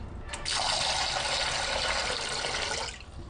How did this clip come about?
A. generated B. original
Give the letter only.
B